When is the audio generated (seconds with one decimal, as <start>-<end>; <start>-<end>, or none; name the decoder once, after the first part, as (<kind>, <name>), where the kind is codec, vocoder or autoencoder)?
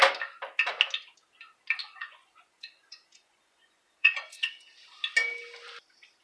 1.8-4.5 (vocoder, Vocos)